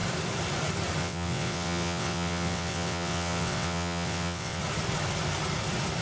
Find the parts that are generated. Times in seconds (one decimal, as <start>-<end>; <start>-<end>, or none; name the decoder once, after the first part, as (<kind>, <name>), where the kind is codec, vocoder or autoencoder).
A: 1.0-4.6 (vocoder, WaveNeXt)